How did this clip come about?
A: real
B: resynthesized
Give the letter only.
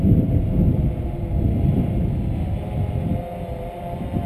A